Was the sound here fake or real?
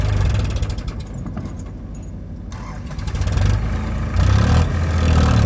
real